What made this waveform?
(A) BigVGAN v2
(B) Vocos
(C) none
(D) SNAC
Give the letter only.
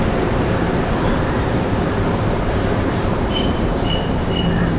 A